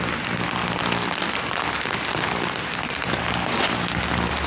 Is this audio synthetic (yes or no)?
no